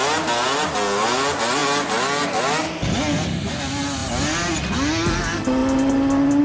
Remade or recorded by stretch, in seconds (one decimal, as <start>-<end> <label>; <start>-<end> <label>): 0.0-6.4 recorded

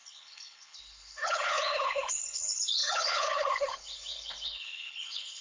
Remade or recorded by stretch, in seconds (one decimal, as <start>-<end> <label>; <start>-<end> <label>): 0.0-5.4 remade